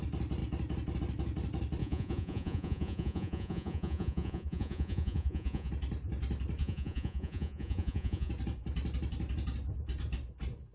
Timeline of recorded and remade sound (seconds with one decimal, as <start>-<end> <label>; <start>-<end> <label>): 0.0-1.8 recorded; 1.8-5.7 remade; 5.7-6.6 recorded; 6.6-8.3 remade; 8.3-10.7 recorded